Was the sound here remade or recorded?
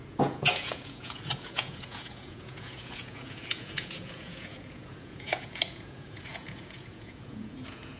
remade